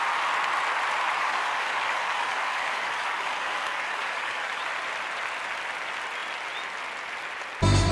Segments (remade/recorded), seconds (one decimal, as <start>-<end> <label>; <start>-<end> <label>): 0.0-1.2 recorded; 1.2-4.6 remade; 4.6-7.9 recorded